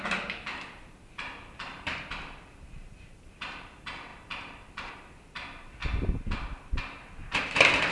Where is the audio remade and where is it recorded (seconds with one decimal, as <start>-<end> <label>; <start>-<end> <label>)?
0.0-5.8 remade; 5.8-7.5 recorded; 7.5-7.9 remade